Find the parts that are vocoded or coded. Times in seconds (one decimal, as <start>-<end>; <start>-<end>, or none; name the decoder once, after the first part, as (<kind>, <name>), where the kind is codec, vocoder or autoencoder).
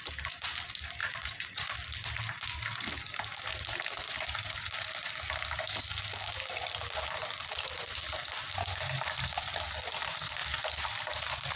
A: 1.0-1.7 (vocoder, Vocos)